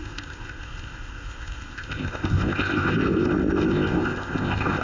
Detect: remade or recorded remade